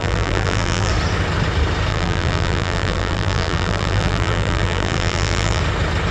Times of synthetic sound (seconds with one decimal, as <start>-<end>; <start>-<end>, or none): 0.0-0.9; 1.9-5.6

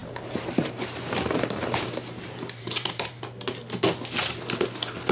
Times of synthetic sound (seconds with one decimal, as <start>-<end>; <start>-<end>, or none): 0.0-3.1

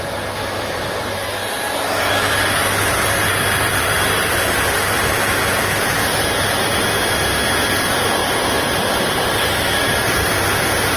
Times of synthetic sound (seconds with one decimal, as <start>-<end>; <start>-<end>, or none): 0.0-2.6; 3.6-5.2; 6.6-11.0

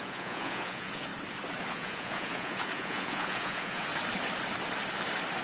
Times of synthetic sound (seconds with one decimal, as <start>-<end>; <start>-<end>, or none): 0.0-1.1; 1.7-3.9